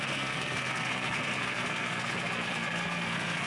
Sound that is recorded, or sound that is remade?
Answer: remade